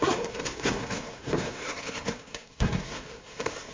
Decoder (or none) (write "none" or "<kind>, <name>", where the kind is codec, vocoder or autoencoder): codec, SNAC